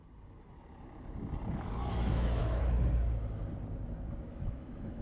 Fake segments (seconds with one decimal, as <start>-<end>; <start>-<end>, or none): 1.9-2.4; 4.3-5.0